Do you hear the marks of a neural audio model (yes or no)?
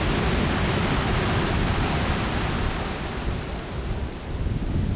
no